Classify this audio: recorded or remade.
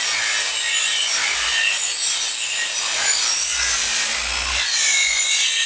recorded